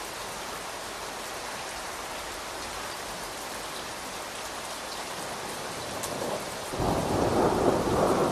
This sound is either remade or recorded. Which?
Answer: remade